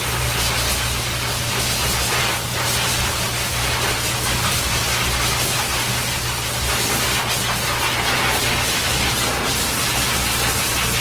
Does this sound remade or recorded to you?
recorded